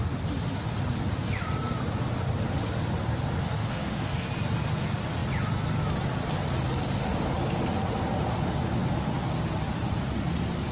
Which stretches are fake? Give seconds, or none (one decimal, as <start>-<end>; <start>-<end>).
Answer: 3.4-4.3

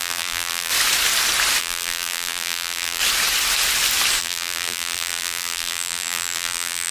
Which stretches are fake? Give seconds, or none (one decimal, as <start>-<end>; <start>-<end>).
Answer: 0.0-0.7; 1.6-3.0; 4.2-6.9

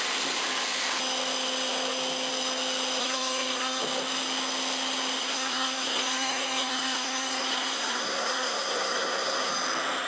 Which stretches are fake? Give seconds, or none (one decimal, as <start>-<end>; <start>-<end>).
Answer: 3.0-3.8; 5.2-9.5

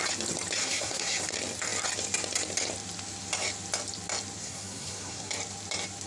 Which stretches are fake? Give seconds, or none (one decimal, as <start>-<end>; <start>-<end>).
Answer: 0.6-1.2; 4.4-5.3

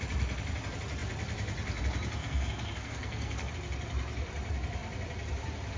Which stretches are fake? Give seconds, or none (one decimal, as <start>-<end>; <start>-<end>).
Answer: 2.2-3.5

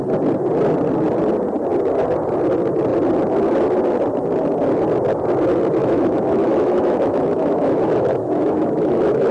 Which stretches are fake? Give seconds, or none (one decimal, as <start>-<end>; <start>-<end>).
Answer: 5.8-9.3